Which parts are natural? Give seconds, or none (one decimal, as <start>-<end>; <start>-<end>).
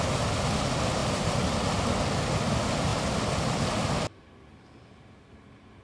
0.0-2.9; 3.6-5.8